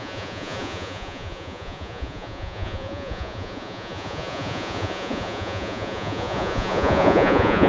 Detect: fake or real fake